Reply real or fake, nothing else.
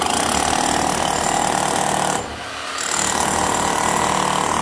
real